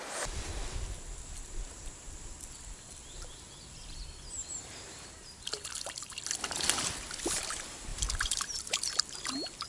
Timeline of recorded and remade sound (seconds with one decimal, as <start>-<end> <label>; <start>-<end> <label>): 0.0-4.4 recorded; 4.4-6.2 remade; 6.2-7.9 recorded; 7.9-8.6 remade; 8.6-9.7 recorded